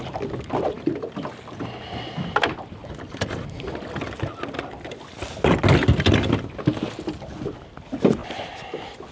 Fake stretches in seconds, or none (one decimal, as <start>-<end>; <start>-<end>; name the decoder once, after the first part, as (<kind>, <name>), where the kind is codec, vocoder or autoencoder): none